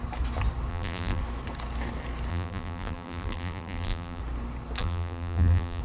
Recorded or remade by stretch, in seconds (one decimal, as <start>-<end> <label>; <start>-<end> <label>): 0.0-0.7 recorded; 0.7-1.2 remade; 1.2-2.3 recorded; 2.3-4.2 remade; 4.2-4.8 recorded; 4.8-5.8 remade